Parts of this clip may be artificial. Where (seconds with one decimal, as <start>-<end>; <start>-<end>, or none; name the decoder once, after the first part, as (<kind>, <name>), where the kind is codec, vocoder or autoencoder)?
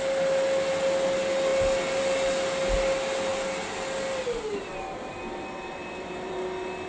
5.8-6.3 (vocoder, BigVGAN v2)